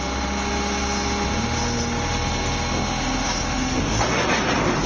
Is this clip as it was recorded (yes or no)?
yes